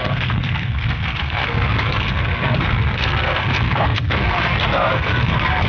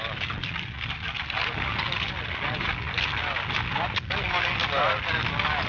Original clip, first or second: second